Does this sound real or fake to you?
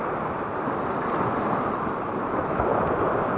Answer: real